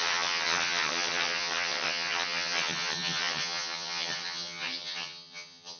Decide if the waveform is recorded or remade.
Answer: remade